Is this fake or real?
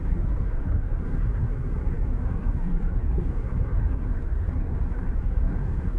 fake